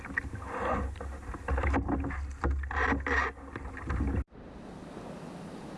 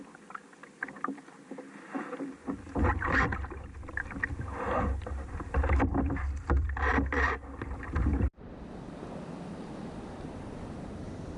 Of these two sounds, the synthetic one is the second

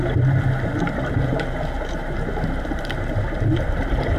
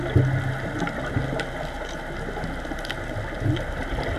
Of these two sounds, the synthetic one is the first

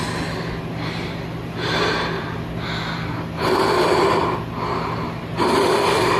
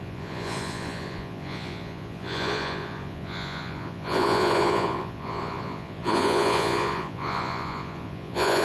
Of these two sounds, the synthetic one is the second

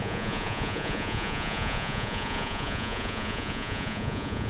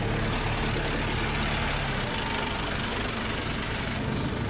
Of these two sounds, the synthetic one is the first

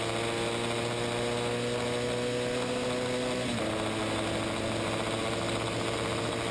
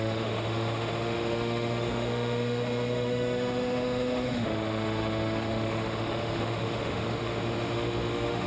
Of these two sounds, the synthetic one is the second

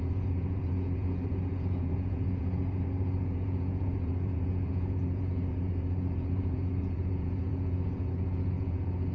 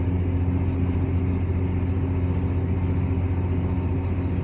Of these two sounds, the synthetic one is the first